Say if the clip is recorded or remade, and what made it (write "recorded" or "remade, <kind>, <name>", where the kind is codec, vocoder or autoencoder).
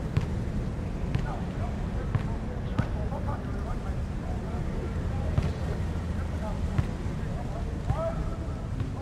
recorded